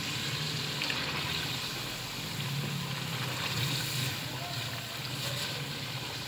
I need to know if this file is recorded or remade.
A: recorded